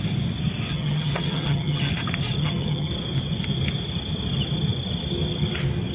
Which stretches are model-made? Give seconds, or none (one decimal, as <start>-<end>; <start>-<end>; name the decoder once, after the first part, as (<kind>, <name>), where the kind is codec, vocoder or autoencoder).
0.7-1.9 (vocoder, HiFi-GAN); 2.4-2.9